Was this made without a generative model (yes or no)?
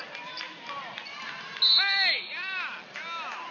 yes